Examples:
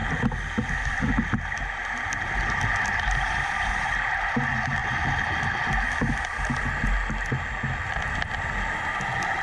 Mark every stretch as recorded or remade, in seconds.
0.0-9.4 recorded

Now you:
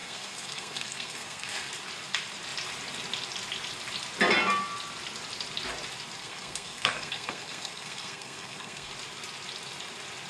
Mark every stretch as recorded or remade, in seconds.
0.0-1.7 remade; 1.7-6.2 recorded; 6.2-8.9 remade; 8.9-10.3 recorded

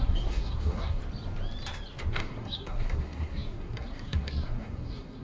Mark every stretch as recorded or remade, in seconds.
0.0-1.0 remade; 1.0-2.1 recorded; 2.1-5.2 remade